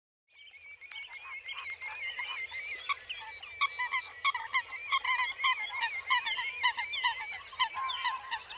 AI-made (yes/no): no